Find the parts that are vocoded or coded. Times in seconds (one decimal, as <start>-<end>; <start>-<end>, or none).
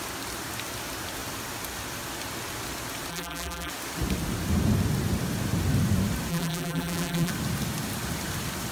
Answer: 3.1-3.7; 6.3-7.3